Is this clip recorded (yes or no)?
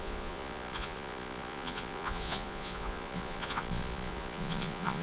no